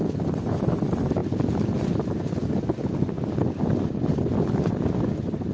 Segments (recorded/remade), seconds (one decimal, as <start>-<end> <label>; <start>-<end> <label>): 0.0-5.5 recorded